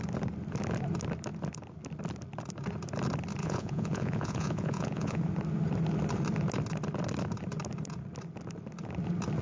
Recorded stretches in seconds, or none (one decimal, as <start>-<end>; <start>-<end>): 0.0-3.4; 5.2-9.4